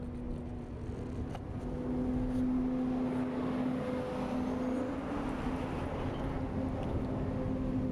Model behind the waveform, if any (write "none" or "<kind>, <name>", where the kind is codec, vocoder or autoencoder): none